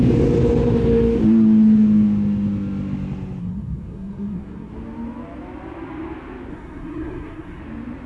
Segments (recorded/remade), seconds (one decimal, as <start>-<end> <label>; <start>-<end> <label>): 0.0-3.4 recorded; 3.4-4.7 remade; 4.7-6.5 recorded; 6.5-7.6 remade; 7.6-8.1 recorded